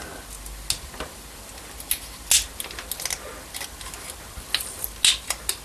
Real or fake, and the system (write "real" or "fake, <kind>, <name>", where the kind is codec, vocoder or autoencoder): real